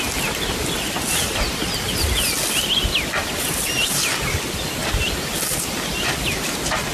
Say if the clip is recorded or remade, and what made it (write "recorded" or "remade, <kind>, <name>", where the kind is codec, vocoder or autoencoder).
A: recorded